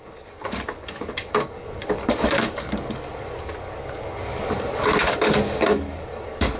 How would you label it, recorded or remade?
remade